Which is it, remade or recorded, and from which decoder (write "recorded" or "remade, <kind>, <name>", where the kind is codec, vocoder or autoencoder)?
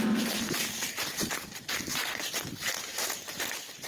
recorded